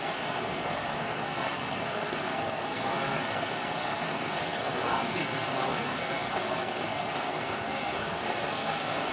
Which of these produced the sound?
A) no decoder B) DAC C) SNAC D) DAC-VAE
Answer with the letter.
C